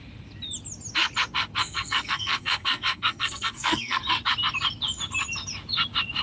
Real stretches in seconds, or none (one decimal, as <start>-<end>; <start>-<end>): 0.0-1.6; 4.0-6.2